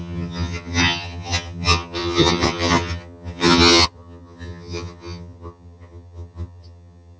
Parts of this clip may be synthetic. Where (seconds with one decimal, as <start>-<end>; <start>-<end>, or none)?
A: 0.0-7.2